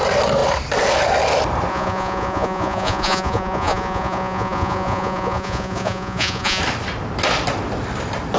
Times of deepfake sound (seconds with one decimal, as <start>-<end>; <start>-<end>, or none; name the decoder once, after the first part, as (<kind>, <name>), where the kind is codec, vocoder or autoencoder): 1.7-6.6 (vocoder, Vocos)